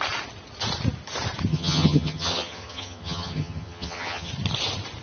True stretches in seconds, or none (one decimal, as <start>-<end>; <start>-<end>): 0.0-1.5; 4.3-5.0